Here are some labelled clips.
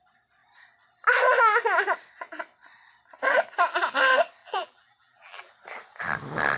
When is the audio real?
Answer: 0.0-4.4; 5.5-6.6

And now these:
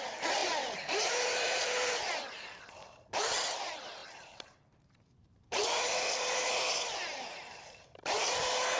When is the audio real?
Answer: none

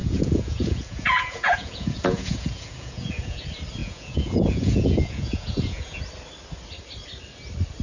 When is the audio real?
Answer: 3.4-3.8; 6.0-7.8

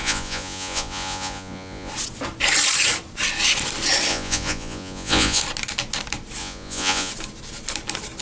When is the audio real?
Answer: 1.9-4.1; 5.4-6.4; 7.1-8.2

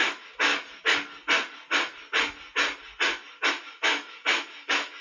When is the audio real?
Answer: 0.5-3.5

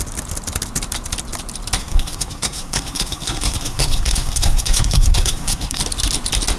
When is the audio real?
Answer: 0.0-1.8; 5.8-6.6

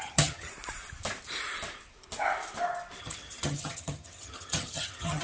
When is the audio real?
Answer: 0.5-3.0